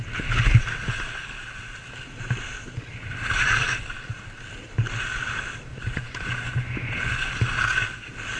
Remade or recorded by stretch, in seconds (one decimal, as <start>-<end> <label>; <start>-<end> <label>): 0.0-5.7 recorded; 5.7-7.3 remade; 7.3-8.4 recorded